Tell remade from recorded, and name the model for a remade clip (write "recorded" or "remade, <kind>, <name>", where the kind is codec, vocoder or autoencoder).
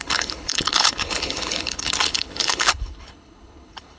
remade, codec, HILCodec